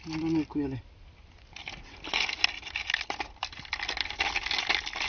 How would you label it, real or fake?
real